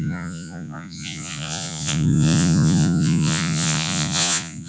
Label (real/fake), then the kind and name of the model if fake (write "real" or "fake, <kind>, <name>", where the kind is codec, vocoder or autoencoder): fake, vocoder, Vocos